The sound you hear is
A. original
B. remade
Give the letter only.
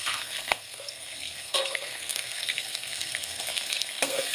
B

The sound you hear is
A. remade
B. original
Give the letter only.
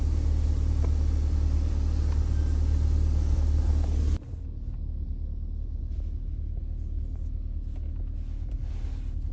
B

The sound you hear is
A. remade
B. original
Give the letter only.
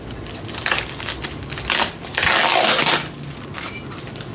B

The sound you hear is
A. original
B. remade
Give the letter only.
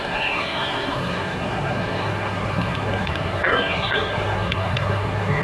B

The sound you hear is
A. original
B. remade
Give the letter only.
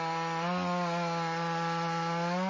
A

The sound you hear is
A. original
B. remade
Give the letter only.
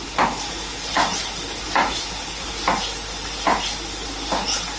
A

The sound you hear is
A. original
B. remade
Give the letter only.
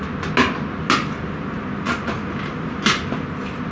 A